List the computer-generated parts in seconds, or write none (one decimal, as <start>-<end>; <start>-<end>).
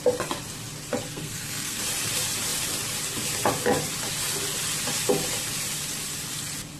1.1-1.8